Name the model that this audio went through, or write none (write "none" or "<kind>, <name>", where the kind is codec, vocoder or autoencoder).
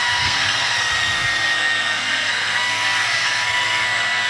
codec, SNAC